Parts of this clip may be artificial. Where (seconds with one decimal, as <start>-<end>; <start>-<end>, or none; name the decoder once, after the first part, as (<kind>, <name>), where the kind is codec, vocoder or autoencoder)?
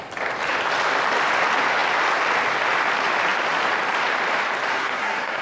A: 4.7-5.4 (codec, SNAC)